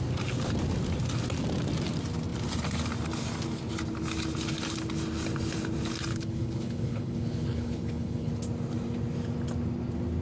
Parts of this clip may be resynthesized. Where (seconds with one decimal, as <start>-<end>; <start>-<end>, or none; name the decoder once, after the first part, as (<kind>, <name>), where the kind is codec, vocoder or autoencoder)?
6.1-8.3 (codec, HILCodec)